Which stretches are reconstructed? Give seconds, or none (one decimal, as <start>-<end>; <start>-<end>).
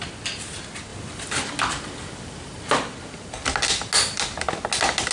none